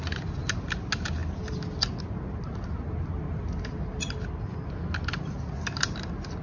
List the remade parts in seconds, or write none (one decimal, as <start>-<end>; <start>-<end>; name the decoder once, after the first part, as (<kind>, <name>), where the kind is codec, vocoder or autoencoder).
none